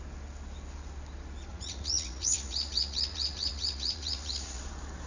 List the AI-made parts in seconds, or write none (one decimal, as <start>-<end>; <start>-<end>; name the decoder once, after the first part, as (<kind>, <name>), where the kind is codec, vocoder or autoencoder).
1.5-4.6 (vocoder, Vocos)